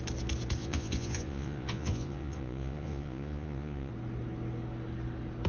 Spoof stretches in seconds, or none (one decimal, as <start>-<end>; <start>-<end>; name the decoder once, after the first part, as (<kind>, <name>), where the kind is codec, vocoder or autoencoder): 0.6-3.9 (vocoder, Vocos)